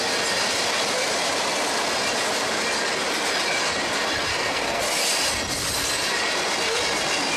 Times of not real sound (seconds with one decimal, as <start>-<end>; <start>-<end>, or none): 4.3-4.8